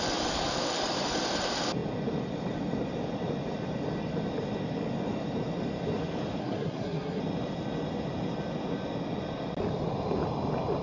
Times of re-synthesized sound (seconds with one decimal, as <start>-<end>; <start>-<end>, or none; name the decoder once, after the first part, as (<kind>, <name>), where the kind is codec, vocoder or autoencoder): 6.4-7.2 (codec, SNAC)